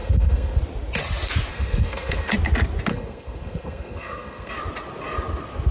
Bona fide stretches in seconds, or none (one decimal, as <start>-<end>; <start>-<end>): 0.6-1.5; 2.3-2.9; 4.5-5.7